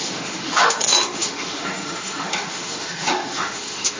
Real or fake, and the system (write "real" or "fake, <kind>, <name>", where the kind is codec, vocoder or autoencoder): fake, autoencoder, DAC-VAE